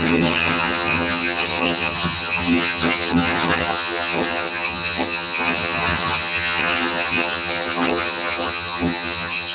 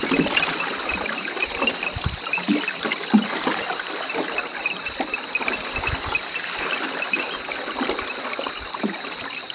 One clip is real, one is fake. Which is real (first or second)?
second